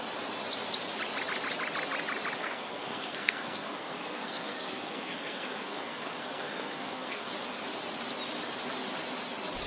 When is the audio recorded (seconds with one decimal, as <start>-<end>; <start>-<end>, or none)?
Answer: 0.0-2.4; 7.3-9.7